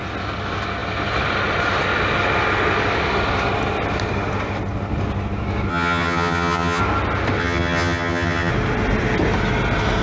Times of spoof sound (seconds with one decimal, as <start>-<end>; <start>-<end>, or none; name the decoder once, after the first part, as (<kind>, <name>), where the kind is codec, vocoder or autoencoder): 5.7-6.8 (vocoder, HiFi-GAN); 7.4-8.5

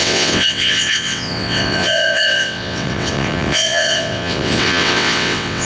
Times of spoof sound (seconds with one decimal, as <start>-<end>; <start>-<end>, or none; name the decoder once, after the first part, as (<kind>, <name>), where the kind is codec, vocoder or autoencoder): 0.0-5.6 (vocoder, WaveNeXt)

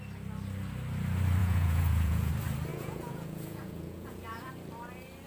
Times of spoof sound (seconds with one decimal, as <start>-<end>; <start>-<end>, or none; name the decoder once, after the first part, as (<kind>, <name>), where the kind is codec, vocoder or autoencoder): 1.4-2.3 (vocoder, Vocos); 2.7-4.5

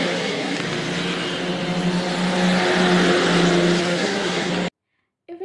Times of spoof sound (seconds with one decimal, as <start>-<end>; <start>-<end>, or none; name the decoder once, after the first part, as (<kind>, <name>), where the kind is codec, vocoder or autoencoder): 0.0-0.6 (codec, SNAC); 3.8-4.5

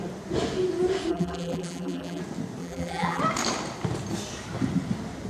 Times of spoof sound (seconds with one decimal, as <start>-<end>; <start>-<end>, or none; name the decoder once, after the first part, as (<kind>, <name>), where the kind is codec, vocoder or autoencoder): 1.1-2.2 (vocoder, BigVGAN v2); 2.6-3.2

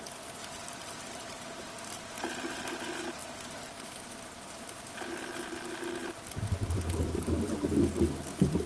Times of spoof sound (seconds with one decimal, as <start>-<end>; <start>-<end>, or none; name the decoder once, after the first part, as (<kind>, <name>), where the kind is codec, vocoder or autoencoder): 0.4-2.7 (vocoder, BigVGAN v2); 3.2-4.2